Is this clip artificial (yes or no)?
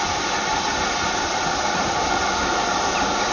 no